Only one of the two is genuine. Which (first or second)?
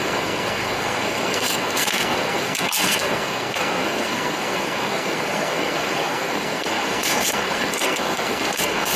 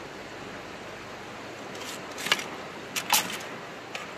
second